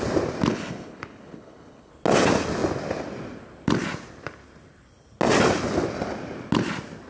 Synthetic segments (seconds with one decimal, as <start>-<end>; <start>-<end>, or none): 0.5-1.9